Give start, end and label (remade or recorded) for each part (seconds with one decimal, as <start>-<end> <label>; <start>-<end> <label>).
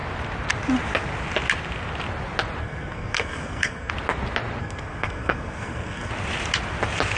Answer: 0.0-2.6 recorded; 2.6-3.9 remade; 3.9-4.6 recorded; 4.6-6.1 remade; 6.1-7.2 recorded